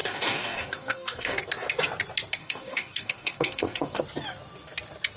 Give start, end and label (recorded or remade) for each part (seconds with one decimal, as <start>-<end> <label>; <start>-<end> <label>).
0.0-1.4 remade; 1.4-2.4 recorded; 2.4-4.0 remade; 4.0-5.2 recorded